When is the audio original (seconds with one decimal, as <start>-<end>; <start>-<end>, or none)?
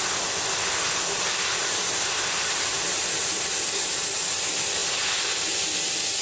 0.0-1.6; 3.9-6.2